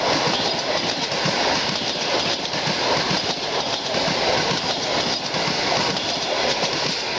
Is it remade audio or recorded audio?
recorded